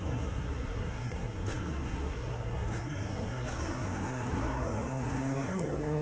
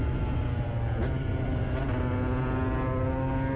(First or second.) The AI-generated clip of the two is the first